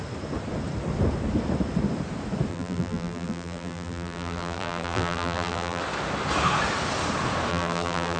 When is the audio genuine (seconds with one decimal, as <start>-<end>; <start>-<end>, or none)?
0.0-2.5; 5.8-7.5